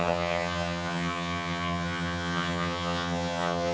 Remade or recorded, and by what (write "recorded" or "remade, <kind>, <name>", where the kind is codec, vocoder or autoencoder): remade, vocoder, HiFi-GAN